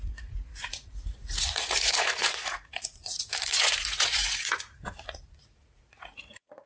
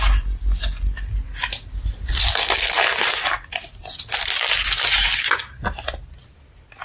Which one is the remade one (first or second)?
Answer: first